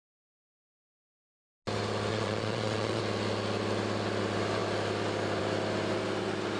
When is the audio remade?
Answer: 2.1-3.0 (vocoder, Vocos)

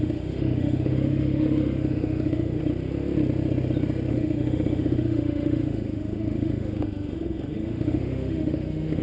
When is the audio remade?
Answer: 0.0-2.6 (autoencoder, DAC-VAE); 4.1-9.0

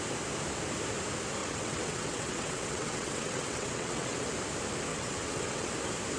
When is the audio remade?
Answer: 1.4-4.3 (vocoder, WaveNeXt); 4.9-5.7

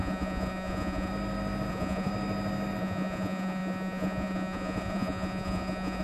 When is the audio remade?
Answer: 0.0-1.1 (vocoder, Vocos); 1.7-2.1; 2.8-6.0

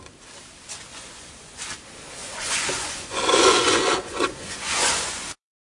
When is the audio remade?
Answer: 0.9-1.6 (vocoder, Vocos); 2.2-5.6

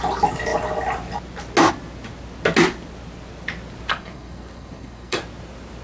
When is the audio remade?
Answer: 3.9-5.2 (codec, SNAC)

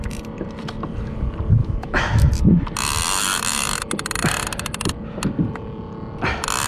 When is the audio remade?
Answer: 1.6-2.3 (autoencoder, DAC-VAE)